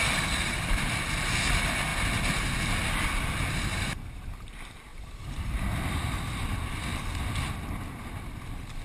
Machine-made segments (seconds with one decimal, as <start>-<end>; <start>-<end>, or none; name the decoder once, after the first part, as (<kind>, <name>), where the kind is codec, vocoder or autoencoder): 3.7-4.3 (vocoder, BigVGAN v2); 4.9-5.7

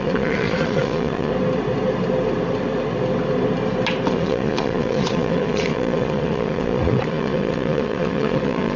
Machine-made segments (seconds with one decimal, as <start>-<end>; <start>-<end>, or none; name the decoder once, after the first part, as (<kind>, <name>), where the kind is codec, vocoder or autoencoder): 0.0-1.3 (vocoder, Vocos); 4.1-8.8

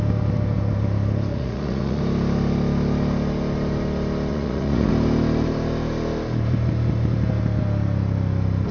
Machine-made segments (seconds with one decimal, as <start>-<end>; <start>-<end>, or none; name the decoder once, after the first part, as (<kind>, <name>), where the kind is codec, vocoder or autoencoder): 1.3-2.0 (vocoder, Vocos); 4.3-4.9

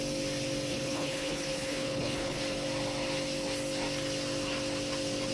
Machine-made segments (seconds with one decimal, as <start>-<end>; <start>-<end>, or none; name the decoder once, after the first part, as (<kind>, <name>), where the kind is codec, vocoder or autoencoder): 0.7-2.4 (codec, HILCodec)

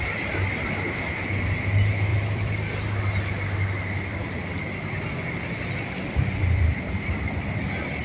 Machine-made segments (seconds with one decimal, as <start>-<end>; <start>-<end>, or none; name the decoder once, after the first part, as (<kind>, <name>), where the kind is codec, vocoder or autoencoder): 2.1-2.9 (vocoder, BigVGAN v2); 4.1-7.4

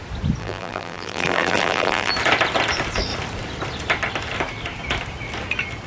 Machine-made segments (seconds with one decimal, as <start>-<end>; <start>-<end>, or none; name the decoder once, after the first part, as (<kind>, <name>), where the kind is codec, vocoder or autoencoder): 0.4-2.1 (vocoder, BigVGAN v2)